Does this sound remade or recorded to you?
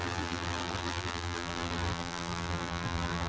remade